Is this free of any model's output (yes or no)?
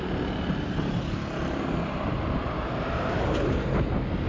yes